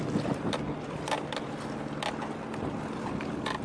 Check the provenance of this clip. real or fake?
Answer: real